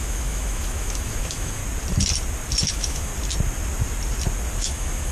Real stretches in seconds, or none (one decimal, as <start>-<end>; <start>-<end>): 1.6-2.7; 3.1-4.6